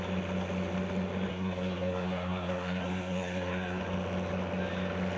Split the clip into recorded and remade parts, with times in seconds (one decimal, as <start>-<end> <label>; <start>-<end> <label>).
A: 0.0-1.3 recorded; 1.3-3.8 remade; 3.8-5.2 recorded